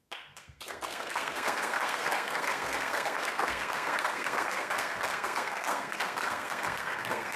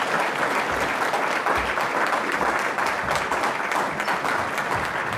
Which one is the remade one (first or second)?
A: first